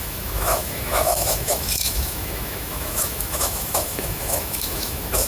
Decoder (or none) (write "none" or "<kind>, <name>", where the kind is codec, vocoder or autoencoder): autoencoder, DAC-VAE